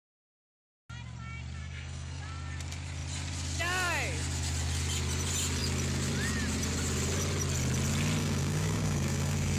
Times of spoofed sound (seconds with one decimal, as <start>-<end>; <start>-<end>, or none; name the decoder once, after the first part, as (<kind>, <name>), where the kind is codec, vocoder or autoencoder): 1.6-2.2 (codec, SNAC); 8.2-9.6